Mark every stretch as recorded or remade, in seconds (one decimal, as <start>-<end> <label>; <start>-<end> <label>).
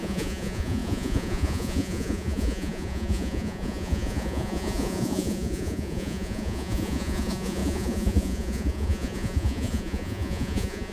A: 0.0-10.9 remade